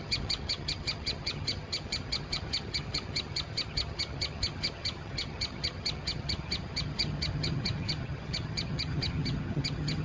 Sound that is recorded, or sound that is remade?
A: remade